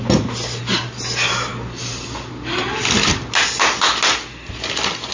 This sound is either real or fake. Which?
real